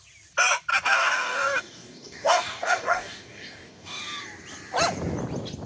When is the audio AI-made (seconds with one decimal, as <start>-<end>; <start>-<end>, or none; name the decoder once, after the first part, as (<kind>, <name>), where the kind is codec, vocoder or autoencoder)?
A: 0.7-4.0 (codec, DAC)